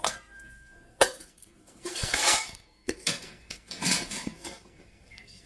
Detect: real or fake fake